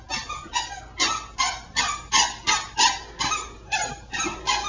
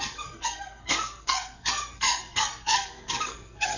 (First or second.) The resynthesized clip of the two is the second